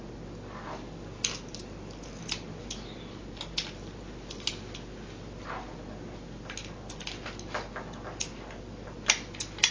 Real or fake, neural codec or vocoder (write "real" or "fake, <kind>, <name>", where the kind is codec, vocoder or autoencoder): real